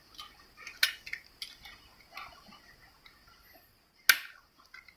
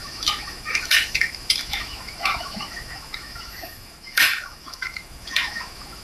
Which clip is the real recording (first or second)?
first